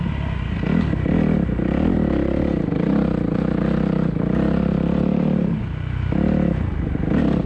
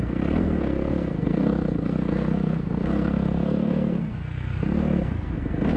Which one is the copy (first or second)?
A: second